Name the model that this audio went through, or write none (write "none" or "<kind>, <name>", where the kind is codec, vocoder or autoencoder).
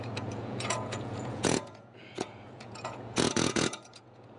vocoder, Vocos